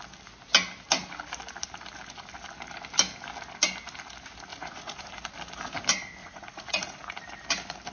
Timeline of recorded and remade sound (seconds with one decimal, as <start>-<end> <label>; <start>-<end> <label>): 0.0-4.5 recorded; 4.5-5.2 remade; 5.2-6.2 recorded; 6.2-7.1 remade; 7.1-7.9 recorded